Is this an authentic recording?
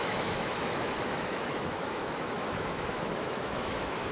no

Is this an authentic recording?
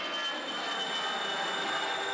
yes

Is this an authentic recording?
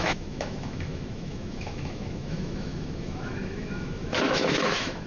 no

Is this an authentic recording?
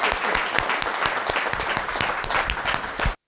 yes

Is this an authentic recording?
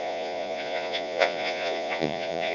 no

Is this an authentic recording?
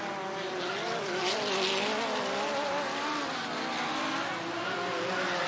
yes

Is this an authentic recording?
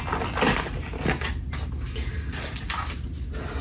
yes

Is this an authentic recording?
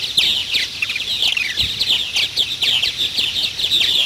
yes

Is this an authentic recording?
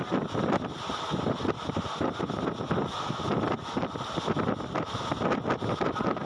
yes